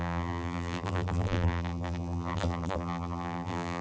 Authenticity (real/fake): fake